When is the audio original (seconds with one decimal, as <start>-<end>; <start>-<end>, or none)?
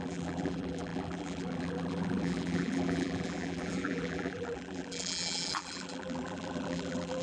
none